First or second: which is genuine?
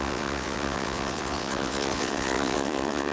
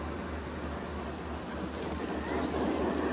second